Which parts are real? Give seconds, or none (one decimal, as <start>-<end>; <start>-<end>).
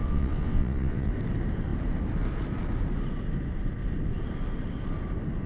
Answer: 1.1-5.5